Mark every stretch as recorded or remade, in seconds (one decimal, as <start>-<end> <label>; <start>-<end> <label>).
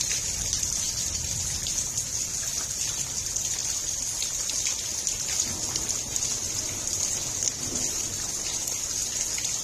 0.0-9.6 recorded